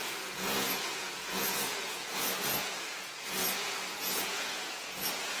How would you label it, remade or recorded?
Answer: remade